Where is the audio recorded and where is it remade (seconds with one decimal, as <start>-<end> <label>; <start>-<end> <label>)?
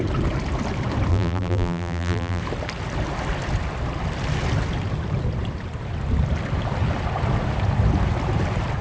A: 0.0-1.1 recorded; 1.1-2.4 remade; 2.4-8.8 recorded